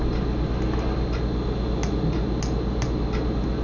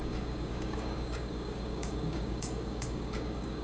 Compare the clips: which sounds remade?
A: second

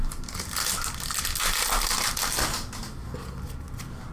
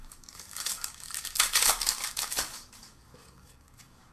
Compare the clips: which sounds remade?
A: second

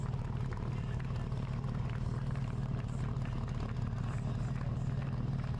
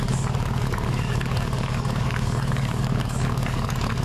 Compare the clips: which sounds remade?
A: second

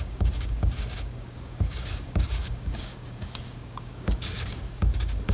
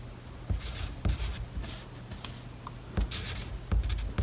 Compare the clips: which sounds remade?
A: first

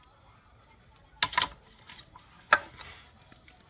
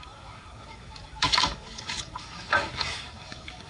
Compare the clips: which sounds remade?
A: second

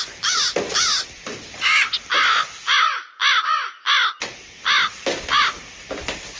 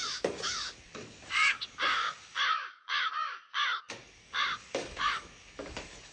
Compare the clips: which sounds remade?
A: second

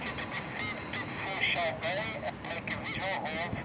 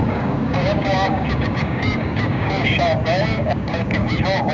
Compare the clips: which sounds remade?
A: second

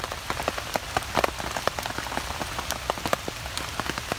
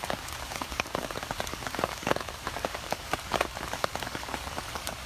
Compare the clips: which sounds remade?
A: second